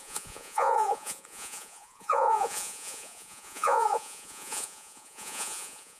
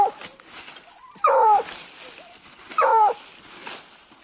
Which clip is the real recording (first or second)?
second